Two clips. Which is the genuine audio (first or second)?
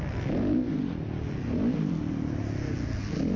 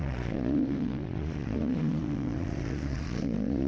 first